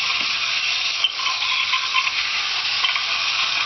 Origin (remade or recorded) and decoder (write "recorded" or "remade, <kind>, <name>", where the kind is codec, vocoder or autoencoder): recorded